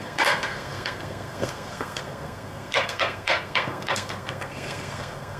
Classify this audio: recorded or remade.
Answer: remade